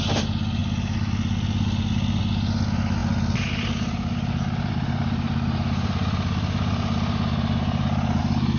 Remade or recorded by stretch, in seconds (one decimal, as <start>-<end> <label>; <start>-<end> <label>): 0.0-8.6 recorded

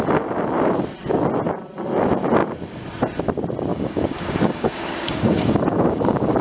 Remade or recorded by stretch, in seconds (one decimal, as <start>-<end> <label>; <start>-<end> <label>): 0.0-3.7 recorded; 3.7-6.4 remade

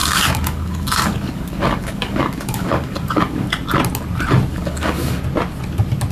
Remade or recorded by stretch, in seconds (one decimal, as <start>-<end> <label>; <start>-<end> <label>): 0.0-3.5 remade; 3.5-4.5 recorded; 4.5-5.2 remade; 5.2-6.1 recorded

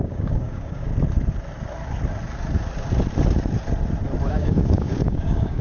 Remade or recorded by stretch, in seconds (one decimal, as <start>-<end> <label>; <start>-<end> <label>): 0.0-0.9 remade; 0.9-4.3 recorded; 4.3-5.6 remade